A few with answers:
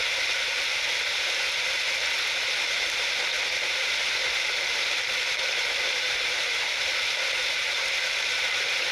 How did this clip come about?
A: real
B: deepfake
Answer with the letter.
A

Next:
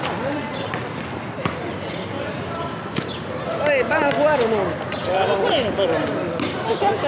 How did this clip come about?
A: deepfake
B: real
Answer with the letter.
B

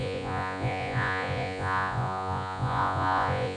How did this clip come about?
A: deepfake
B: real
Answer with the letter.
A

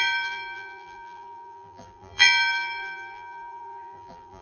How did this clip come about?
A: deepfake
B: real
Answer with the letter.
A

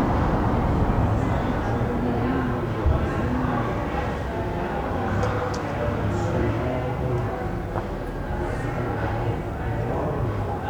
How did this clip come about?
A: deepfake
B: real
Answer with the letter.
B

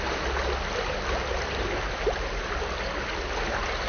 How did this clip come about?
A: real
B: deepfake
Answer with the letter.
A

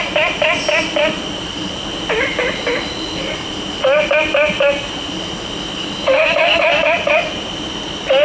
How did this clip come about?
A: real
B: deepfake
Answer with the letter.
A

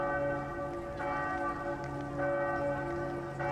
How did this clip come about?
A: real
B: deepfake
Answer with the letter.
A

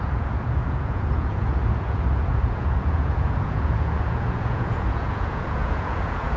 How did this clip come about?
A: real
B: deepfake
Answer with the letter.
B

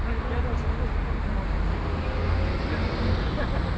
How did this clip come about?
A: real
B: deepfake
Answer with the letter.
A